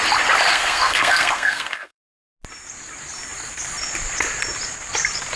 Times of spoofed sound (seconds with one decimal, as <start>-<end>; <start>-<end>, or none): 0.5-2.0